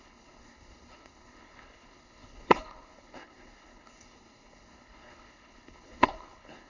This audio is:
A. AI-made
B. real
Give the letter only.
A